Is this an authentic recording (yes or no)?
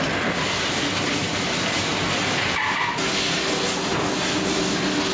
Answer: yes